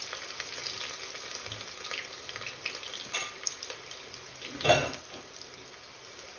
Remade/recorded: recorded